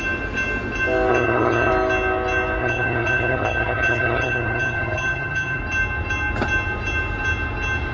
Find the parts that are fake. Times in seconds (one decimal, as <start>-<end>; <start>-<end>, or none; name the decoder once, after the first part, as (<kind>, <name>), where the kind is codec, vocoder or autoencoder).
1.1-1.7 (vocoder, HiFi-GAN); 2.6-5.6